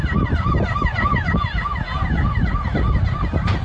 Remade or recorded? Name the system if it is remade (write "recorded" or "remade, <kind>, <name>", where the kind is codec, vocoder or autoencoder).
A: recorded